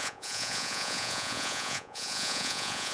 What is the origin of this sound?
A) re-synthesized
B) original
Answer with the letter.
A